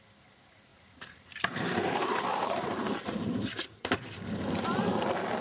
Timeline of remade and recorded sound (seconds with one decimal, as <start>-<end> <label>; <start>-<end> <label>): 0.0-0.7 recorded; 0.7-3.9 remade; 3.9-5.4 recorded

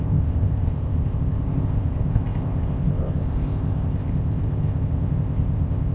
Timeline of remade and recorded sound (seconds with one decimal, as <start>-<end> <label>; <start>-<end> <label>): 0.0-5.9 remade

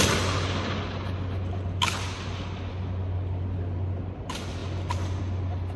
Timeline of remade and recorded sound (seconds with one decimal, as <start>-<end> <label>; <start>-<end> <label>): 0.0-5.8 recorded

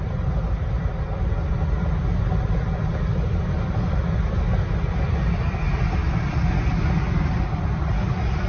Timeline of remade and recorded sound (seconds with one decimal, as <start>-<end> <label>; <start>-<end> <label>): 0.0-8.5 recorded

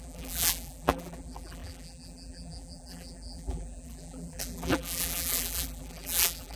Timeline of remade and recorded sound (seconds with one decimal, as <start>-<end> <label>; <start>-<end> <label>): 0.0-6.6 remade

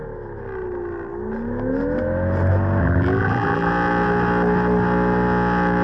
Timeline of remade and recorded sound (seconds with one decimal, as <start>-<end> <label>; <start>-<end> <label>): 0.0-2.8 recorded; 2.8-3.7 remade; 3.7-5.8 recorded

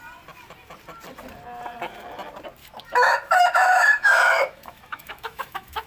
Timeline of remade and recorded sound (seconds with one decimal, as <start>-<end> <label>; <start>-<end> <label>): 0.0-2.6 recorded; 2.6-5.9 remade

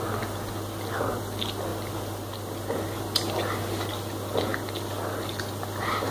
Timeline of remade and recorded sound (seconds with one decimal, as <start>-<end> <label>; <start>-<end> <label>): 0.0-6.1 recorded